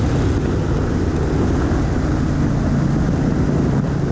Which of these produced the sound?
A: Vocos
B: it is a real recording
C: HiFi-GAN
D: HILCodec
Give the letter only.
B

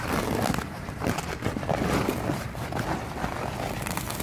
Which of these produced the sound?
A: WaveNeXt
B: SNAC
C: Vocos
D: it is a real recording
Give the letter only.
D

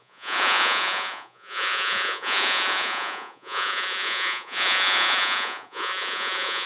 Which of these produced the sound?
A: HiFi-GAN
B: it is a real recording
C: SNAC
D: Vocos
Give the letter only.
D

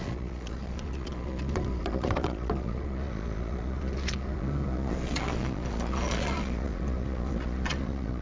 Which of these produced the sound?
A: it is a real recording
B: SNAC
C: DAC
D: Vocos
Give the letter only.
D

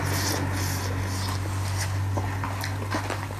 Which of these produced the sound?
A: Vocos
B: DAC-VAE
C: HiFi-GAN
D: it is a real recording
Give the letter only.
D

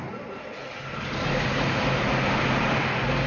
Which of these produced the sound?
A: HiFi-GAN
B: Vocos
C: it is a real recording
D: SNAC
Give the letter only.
C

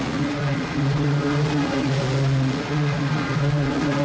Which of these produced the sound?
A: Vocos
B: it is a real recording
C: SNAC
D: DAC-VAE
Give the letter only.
A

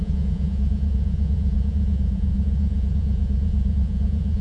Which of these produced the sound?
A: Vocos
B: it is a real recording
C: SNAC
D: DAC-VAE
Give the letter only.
A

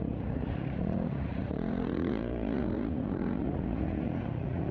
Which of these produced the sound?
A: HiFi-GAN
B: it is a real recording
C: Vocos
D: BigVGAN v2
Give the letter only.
C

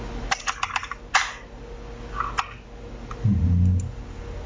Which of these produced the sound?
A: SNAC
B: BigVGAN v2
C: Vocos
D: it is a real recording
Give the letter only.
D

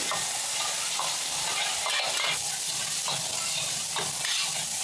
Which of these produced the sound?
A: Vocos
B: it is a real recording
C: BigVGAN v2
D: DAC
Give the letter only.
B